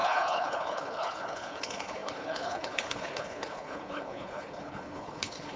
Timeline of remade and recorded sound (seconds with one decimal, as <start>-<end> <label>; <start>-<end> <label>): 0.0-5.6 remade